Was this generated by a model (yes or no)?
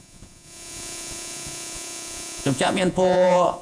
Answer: yes